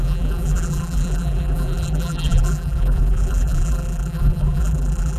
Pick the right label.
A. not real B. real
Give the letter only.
A